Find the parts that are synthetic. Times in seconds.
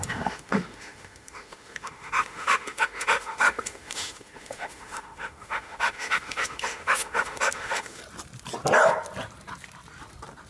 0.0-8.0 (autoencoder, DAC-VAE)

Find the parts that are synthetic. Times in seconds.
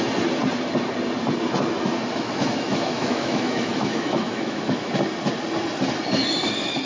2.1-4.9 (autoencoder, DAC-VAE)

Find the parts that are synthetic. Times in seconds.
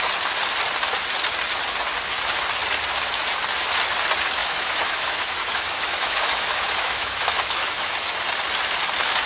4.4-7.9 (autoencoder, DAC-VAE)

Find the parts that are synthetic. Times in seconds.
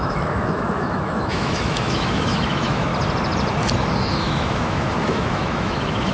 0.0-2.9 (autoencoder, DAC-VAE); 4.2-6.1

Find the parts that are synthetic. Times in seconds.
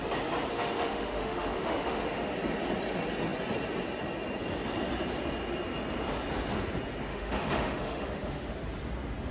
0.5-2.3 (autoencoder, DAC-VAE); 7.1-8.5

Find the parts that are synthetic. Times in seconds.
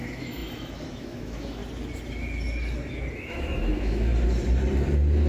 0.0-1.6 (autoencoder, DAC-VAE); 3.1-4.1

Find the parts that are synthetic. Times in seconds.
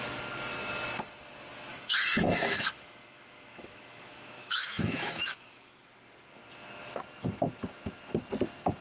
1.7-5.9 (autoencoder, DAC-VAE)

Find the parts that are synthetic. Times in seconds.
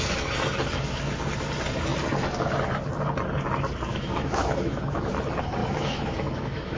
3.9-5.1 (autoencoder, DAC-VAE); 5.6-6.8